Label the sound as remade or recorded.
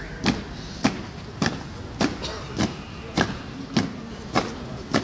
recorded